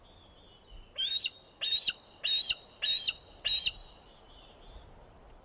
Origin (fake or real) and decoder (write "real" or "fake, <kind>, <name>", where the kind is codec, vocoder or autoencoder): real